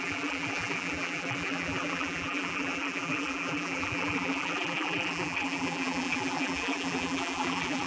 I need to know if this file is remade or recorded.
remade